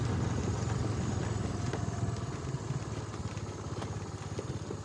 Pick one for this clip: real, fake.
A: real